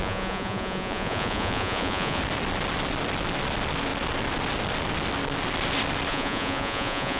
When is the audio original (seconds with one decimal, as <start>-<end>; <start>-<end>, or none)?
2.2-6.1